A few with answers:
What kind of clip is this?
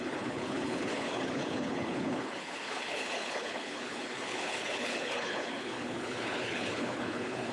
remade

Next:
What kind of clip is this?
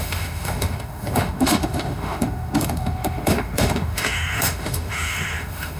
remade